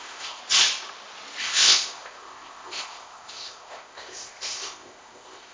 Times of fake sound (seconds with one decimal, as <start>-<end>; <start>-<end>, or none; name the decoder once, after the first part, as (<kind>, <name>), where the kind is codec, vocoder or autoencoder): 0.0-0.4 (codec, ZipCodec); 1.4-5.5